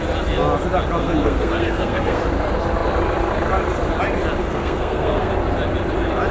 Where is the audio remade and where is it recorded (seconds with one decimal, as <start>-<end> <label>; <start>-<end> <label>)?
0.0-1.0 recorded; 1.0-2.2 remade; 2.2-4.4 recorded; 4.4-5.3 remade; 5.3-6.3 recorded